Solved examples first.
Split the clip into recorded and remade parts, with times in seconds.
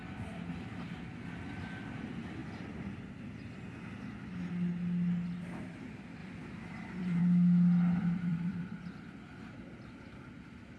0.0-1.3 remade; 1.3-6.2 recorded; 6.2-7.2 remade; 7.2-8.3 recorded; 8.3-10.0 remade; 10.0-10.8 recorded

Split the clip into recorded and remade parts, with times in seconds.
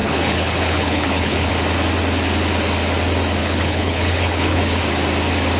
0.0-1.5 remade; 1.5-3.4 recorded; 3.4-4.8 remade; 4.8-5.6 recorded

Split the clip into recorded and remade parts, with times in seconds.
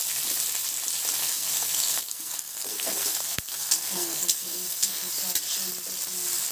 0.0-1.2 recorded; 1.2-5.1 remade; 5.1-6.5 recorded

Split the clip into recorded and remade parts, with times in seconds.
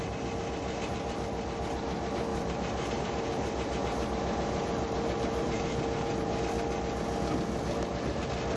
0.0-2.3 recorded; 2.3-6.4 remade; 6.4-8.6 recorded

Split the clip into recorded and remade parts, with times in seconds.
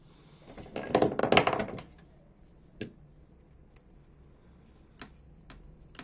0.0-6.0 recorded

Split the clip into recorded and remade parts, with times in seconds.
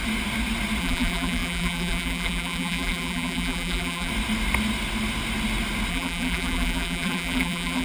0.0-0.8 recorded; 0.8-4.1 remade; 4.1-5.9 recorded; 5.9-7.8 remade